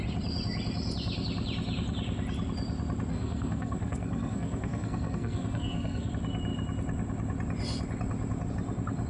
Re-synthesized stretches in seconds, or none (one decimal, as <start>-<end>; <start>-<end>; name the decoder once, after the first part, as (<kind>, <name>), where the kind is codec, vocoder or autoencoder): 3.1-6.1 (codec, SNAC)